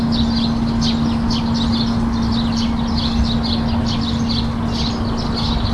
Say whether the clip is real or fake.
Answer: real